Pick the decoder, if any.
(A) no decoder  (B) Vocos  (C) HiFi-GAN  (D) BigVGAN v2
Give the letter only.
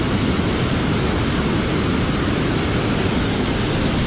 A